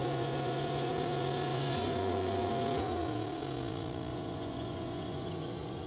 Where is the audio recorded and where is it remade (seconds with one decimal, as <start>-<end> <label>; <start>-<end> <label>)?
0.0-0.9 remade; 0.9-1.5 recorded; 1.5-2.5 remade; 2.5-4.1 recorded; 4.1-5.9 remade